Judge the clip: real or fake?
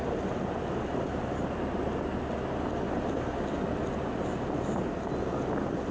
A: real